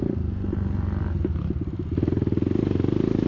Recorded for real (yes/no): yes